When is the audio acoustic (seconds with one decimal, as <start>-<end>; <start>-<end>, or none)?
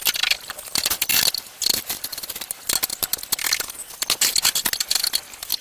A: 0.0-5.6